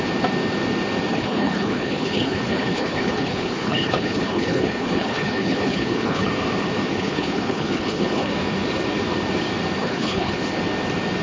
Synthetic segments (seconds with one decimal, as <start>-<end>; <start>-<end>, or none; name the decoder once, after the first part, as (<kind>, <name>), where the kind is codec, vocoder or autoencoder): 1.1-6.3 (codec, HILCodec); 6.9-8.3; 9.8-10.4